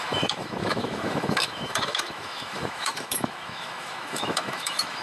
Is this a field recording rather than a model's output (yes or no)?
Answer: no